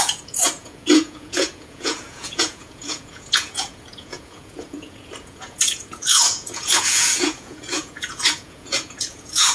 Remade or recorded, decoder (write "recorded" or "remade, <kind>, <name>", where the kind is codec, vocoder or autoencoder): remade, vocoder, Vocos